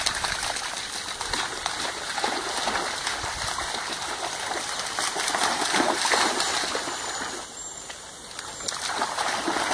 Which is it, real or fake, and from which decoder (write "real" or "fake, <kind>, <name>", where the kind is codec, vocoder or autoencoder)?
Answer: real